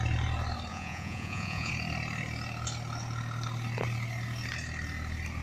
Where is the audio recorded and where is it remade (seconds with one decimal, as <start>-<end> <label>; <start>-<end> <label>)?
0.0-0.7 recorded; 0.7-1.7 remade; 1.7-5.4 recorded